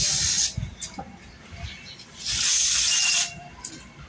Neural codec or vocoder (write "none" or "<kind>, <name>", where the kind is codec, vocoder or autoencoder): none